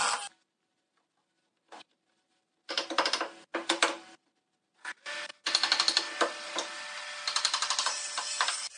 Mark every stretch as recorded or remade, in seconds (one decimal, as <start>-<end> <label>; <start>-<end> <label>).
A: 0.0-8.8 recorded